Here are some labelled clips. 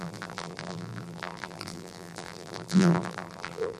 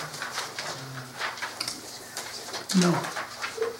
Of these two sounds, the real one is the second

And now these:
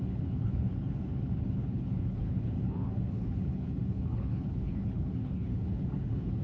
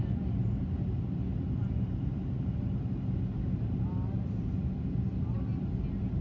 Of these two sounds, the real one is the second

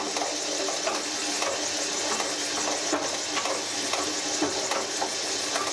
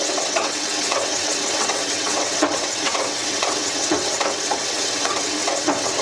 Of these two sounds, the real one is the first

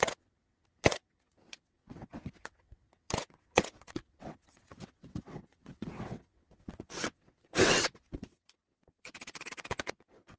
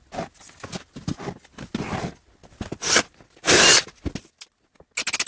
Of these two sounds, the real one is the second